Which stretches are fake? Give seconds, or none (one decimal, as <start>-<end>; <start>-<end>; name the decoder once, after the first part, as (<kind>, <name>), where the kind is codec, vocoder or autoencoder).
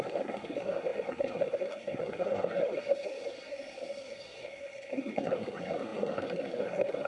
0.0-7.1 (codec, SNAC)